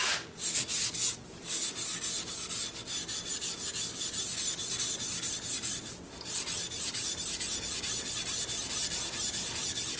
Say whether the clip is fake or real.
real